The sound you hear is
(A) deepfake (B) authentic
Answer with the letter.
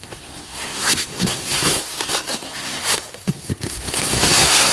A